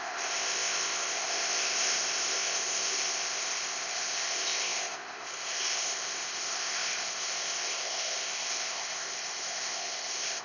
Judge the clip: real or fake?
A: fake